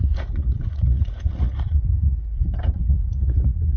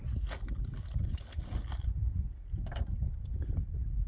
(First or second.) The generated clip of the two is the first